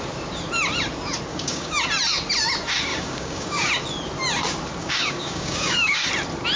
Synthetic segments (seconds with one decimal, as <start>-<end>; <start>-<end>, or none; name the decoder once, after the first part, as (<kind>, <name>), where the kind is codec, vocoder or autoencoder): 1.3-1.8 (codec, DAC); 2.9-3.7; 4.8-6.1

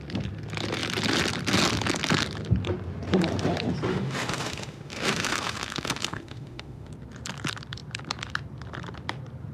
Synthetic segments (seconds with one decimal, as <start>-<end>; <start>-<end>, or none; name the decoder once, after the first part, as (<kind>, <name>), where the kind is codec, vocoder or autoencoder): 3.9-6.9 (autoencoder, DAC-VAE)

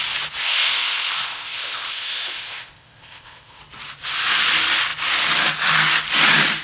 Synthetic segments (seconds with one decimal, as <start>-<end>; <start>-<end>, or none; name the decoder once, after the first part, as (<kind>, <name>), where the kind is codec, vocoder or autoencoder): 0.4-3.6 (codec, ZipCodec)

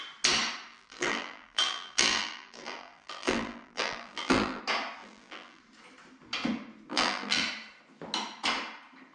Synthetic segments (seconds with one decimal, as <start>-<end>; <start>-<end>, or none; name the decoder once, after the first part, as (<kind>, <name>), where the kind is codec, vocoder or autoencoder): 0.7-4.6 (vocoder, BigVGAN v2); 5.0-5.6; 6.9-7.4